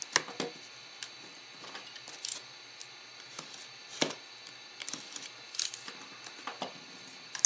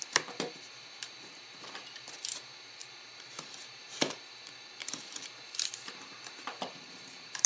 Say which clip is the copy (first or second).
second